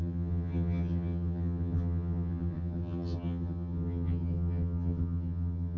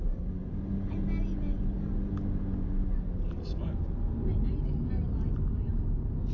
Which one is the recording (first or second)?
second